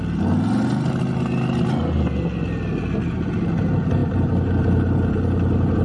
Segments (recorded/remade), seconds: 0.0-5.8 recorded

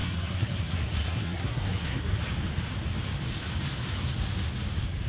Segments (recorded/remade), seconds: 0.0-2.2 remade; 2.2-5.1 recorded

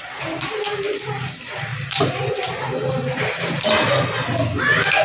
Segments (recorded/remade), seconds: 0.0-1.7 recorded; 1.7-2.5 remade; 2.5-5.0 recorded

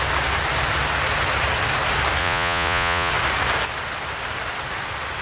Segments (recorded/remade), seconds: 0.0-2.2 recorded; 2.2-3.1 remade; 3.1-5.2 recorded

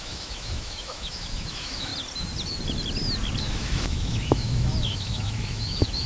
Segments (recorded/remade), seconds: 0.0-1.9 remade; 1.9-3.4 recorded; 3.4-6.1 remade

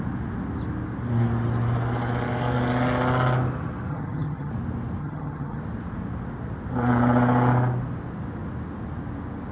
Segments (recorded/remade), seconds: 0.0-3.9 recorded; 3.9-4.5 remade; 4.5-5.0 recorded; 5.0-5.6 remade; 5.6-9.5 recorded

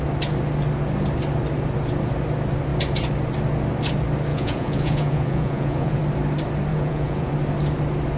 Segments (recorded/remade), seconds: 0.0-4.3 recorded; 4.3-6.0 remade; 6.0-6.7 recorded; 6.7-7.3 remade; 7.3-8.2 recorded

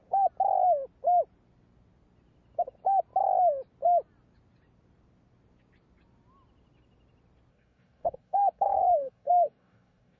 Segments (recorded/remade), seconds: 0.0-7.5 recorded; 7.5-10.2 remade